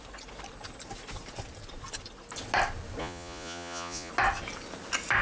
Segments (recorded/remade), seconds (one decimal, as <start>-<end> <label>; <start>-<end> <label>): 0.0-3.0 recorded; 3.0-4.1 remade; 4.1-5.2 recorded